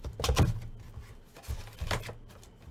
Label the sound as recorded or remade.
recorded